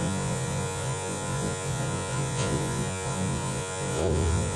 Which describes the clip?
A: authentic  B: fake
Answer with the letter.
B